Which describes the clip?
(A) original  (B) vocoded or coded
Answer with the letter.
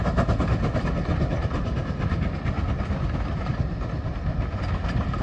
A